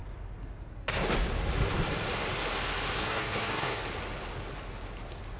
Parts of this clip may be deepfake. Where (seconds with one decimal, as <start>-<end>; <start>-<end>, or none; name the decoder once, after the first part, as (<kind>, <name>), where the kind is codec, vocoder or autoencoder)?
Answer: 3.0-3.8 (codec, SNAC)